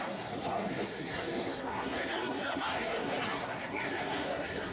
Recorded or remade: remade